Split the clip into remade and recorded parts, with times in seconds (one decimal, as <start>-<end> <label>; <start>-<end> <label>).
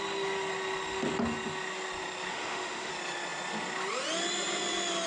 0.0-2.3 recorded; 2.3-2.9 remade; 2.9-5.1 recorded